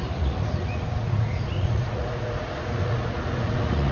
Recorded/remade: remade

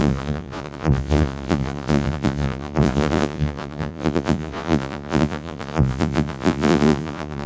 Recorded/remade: remade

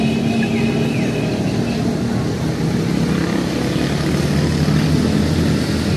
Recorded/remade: recorded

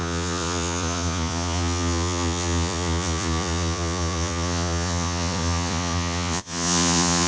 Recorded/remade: remade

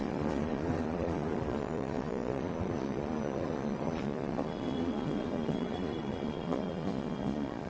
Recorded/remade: remade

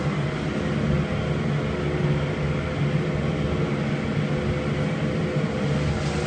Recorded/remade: recorded